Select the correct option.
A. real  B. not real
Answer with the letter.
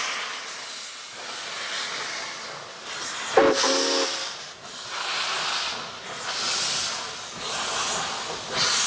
A